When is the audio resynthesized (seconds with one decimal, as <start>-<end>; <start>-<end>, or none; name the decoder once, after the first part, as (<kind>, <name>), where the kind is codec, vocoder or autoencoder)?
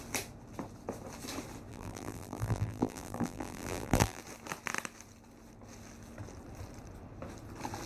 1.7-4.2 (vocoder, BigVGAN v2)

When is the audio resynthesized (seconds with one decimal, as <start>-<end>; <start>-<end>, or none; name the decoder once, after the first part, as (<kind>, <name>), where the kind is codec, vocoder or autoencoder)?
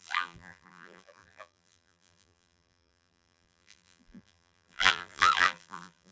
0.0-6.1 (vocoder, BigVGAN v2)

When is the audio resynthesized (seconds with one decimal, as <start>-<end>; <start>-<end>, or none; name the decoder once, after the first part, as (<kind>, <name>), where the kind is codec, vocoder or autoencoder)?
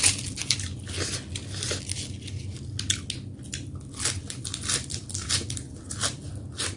none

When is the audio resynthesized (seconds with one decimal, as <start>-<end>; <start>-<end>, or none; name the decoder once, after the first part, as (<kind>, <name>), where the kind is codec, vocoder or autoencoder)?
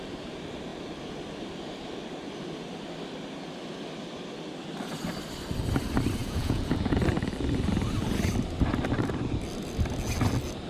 6.2-7.0 (vocoder, Vocos)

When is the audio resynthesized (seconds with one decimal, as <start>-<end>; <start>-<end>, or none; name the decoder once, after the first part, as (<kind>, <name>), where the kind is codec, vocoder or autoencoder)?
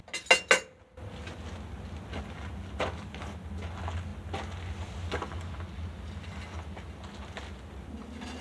none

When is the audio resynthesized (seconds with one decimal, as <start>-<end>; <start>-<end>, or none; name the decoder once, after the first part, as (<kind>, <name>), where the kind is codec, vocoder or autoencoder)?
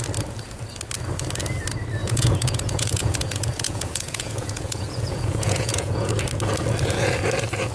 2.0-6.1 (vocoder, Vocos)